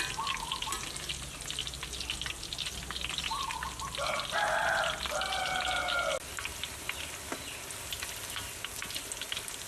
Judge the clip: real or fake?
real